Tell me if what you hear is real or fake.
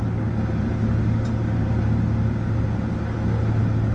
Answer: real